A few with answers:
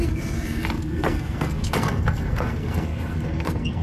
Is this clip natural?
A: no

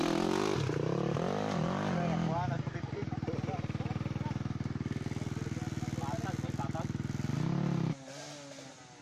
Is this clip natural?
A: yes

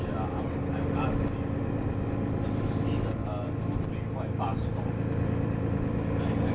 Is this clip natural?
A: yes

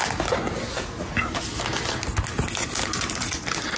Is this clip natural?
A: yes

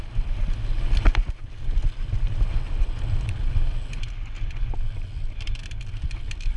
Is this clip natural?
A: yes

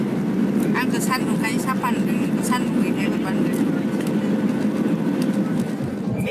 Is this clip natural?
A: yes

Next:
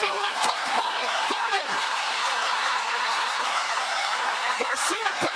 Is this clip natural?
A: no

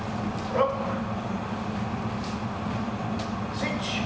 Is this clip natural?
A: yes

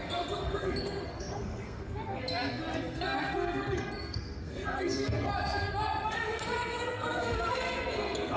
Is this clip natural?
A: no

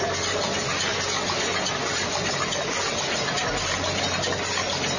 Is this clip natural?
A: yes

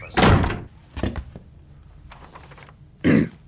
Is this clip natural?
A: yes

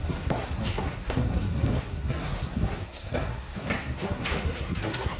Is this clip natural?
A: no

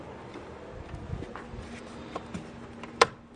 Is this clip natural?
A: no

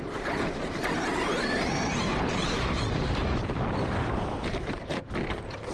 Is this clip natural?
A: no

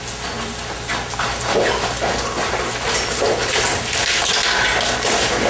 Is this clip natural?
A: yes